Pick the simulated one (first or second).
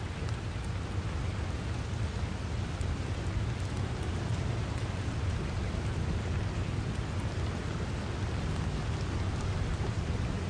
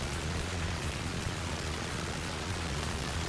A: second